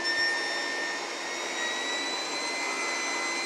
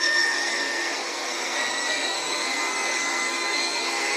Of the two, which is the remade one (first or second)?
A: second